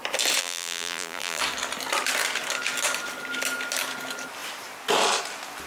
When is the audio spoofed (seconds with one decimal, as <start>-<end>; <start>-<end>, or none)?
0.4-1.4